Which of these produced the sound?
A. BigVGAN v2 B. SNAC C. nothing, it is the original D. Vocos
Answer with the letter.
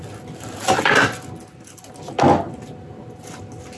C